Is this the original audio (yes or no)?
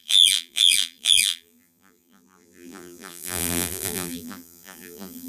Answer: no